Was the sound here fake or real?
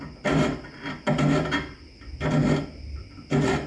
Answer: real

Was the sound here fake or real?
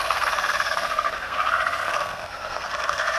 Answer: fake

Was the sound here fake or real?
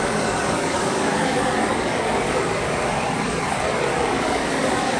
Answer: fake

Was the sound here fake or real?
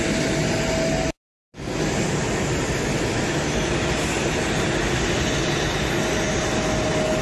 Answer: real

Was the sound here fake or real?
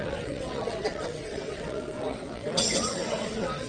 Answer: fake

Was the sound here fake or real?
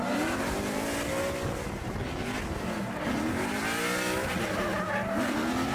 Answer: real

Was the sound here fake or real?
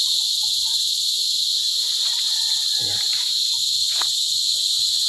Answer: real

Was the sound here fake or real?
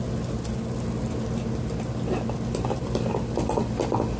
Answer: real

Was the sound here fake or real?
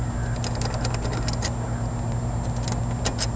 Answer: real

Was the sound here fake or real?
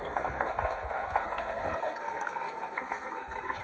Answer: fake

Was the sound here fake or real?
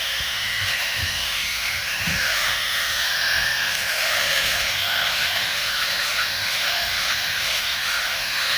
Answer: fake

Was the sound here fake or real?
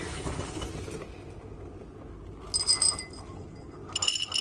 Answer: real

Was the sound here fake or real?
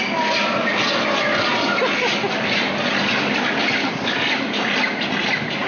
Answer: real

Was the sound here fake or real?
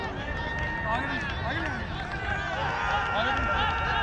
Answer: real